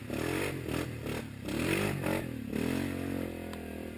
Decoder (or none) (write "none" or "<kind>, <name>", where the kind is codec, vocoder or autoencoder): vocoder, BigVGAN v2